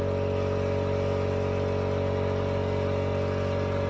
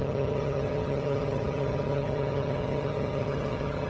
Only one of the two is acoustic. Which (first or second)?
first